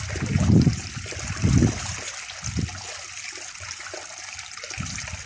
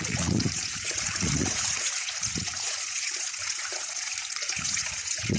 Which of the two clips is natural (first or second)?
first